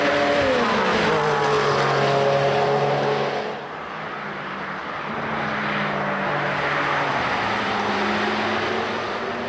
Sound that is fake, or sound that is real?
real